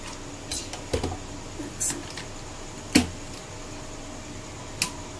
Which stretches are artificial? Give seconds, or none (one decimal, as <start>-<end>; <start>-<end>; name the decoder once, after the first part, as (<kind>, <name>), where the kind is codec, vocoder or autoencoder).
none